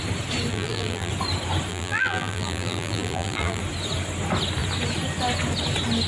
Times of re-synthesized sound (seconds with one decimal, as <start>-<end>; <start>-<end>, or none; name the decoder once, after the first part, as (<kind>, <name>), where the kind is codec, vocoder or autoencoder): 0.5-1.1 (vocoder, BigVGAN v2); 1.7-3.6